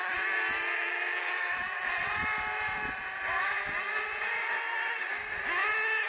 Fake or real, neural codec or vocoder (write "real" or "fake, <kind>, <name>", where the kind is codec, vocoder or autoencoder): real